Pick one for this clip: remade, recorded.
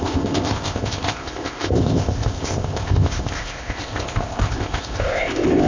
remade